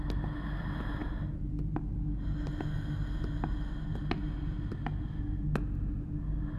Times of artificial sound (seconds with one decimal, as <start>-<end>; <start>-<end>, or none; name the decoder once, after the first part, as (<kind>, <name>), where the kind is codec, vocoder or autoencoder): none